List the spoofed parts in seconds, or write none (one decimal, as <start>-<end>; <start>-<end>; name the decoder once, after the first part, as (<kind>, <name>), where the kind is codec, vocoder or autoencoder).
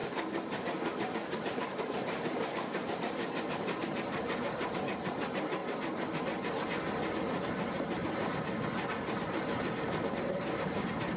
1.4-5.6 (vocoder, BigVGAN v2); 10.1-11.2